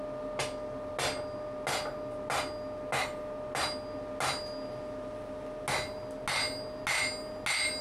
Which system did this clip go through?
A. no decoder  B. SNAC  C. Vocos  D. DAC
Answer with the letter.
A